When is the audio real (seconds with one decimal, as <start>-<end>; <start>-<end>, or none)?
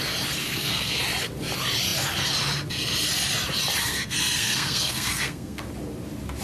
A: 0.0-0.4; 1.0-3.8; 5.6-6.4